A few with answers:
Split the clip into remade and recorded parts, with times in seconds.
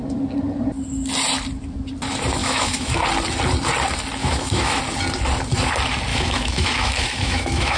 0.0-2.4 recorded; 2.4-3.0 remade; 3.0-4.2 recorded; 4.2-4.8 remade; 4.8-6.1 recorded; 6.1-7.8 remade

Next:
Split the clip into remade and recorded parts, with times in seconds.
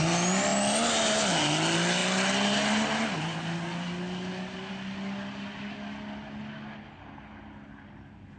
0.0-8.4 recorded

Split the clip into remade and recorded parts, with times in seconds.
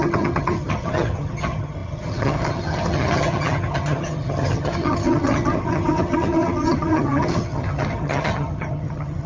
0.0-9.3 remade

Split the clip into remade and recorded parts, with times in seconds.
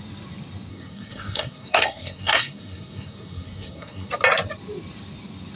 0.0-0.7 recorded; 0.7-4.1 remade; 4.1-5.6 recorded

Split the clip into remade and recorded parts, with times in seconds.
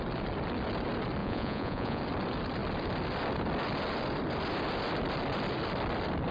0.0-1.2 recorded; 1.2-2.0 remade; 2.0-6.3 recorded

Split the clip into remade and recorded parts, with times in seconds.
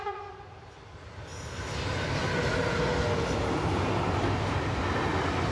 0.0-5.5 recorded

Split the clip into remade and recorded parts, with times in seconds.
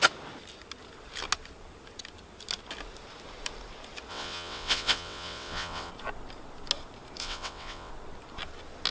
0.0-4.1 recorded; 4.1-5.9 remade; 5.9-7.2 recorded; 7.2-7.9 remade; 7.9-8.9 recorded